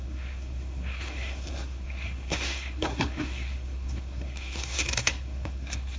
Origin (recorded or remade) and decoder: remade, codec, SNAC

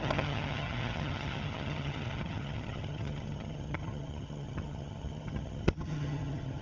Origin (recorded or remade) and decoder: remade, vocoder, HiFi-GAN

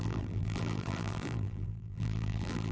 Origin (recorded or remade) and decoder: remade, vocoder, BigVGAN v2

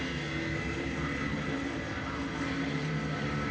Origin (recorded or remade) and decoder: recorded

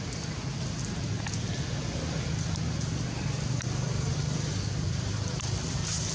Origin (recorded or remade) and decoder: recorded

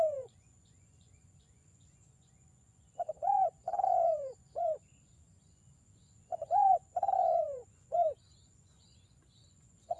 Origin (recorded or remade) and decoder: remade, vocoder, Vocos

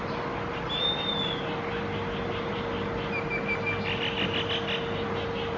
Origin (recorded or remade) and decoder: recorded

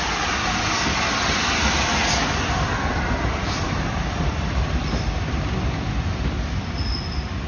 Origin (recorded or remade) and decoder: recorded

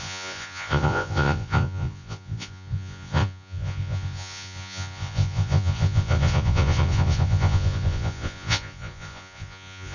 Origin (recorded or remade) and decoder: remade, vocoder, Vocos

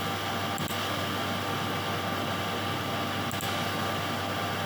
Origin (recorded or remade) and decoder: recorded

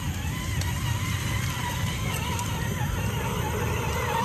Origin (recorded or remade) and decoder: recorded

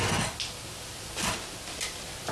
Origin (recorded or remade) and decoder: recorded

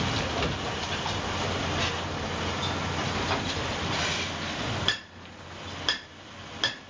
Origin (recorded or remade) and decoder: recorded